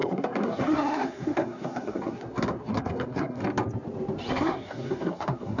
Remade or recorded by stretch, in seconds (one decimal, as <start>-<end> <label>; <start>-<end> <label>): 0.0-3.4 remade; 3.4-4.3 recorded; 4.3-5.6 remade